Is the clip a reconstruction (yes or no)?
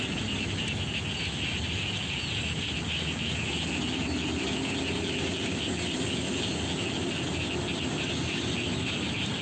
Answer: no